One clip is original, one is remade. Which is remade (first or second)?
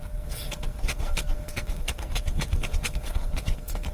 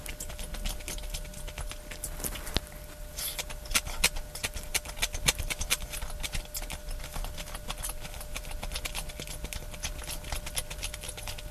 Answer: first